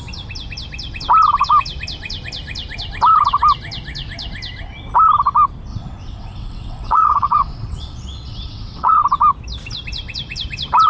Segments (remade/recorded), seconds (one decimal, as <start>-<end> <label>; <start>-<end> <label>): 0.0-5.7 recorded; 5.7-9.0 remade; 9.0-10.9 recorded